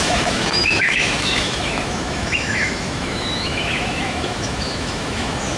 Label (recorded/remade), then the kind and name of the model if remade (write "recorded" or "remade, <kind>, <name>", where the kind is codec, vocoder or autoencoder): remade, autoencoder, DAC-VAE